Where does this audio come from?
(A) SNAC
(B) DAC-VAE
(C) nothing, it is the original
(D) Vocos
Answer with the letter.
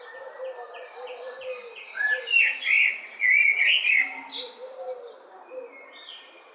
C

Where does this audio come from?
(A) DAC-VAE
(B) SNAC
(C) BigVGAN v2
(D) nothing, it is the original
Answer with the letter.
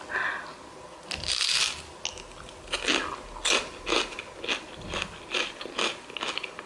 D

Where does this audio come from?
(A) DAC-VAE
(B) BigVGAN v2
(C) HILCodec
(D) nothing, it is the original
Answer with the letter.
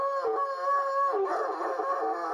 D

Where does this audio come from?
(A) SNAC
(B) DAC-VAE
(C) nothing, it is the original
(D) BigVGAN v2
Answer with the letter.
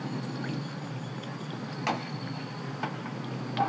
C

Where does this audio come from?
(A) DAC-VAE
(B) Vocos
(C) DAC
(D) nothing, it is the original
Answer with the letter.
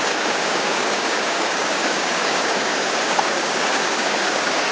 C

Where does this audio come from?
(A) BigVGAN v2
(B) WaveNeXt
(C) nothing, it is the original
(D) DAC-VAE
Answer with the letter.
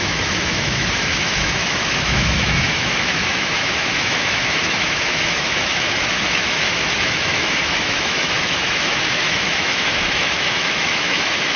D